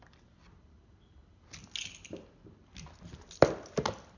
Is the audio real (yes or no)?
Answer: yes